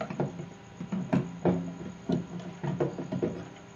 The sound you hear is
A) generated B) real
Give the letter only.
B